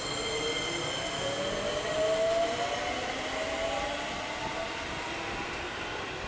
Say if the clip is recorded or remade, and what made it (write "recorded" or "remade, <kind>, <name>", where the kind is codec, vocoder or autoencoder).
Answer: recorded